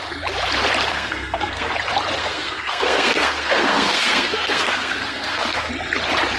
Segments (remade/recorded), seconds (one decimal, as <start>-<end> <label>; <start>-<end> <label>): 0.0-0.9 recorded; 0.9-1.7 remade; 1.7-2.2 recorded; 2.2-5.7 remade; 5.7-6.4 recorded